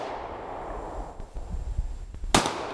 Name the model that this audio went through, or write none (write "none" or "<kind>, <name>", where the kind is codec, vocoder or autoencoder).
none